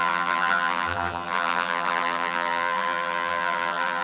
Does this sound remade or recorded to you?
remade